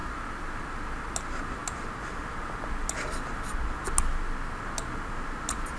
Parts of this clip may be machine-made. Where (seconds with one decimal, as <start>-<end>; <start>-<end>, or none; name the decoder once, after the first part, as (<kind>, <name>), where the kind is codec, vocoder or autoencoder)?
none